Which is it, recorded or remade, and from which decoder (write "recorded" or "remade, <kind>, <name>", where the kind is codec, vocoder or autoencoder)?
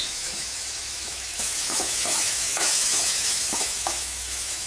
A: remade, autoencoder, DAC-VAE